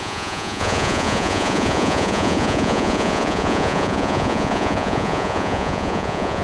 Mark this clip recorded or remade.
remade